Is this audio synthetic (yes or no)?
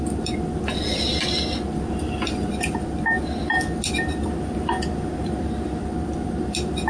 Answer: no